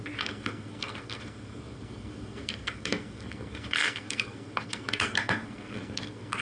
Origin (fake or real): fake